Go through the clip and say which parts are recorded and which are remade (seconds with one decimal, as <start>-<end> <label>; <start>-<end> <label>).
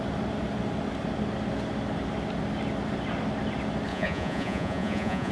0.0-3.9 recorded; 3.9-5.3 remade